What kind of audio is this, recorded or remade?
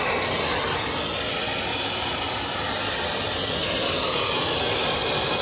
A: recorded